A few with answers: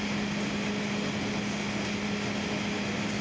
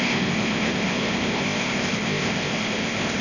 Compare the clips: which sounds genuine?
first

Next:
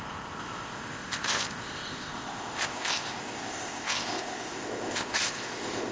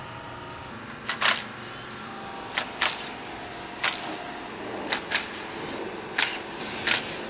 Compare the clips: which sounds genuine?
second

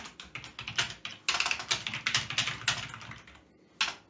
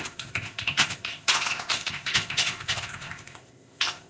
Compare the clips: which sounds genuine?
first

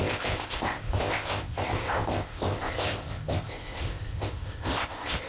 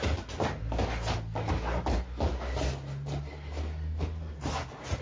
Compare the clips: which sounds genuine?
second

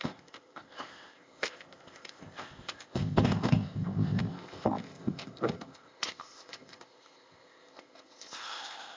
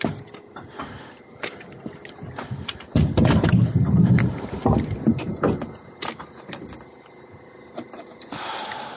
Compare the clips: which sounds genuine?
second